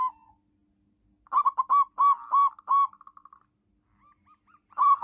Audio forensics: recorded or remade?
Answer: recorded